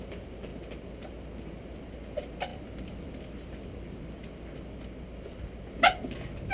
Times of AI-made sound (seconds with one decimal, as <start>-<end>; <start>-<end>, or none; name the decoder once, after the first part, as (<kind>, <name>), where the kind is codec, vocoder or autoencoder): none